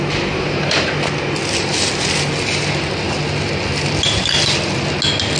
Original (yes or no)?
yes